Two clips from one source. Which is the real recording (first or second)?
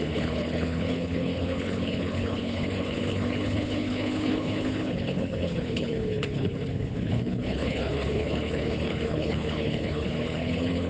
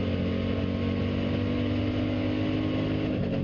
second